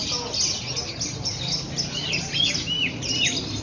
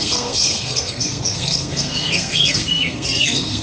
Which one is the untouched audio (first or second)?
first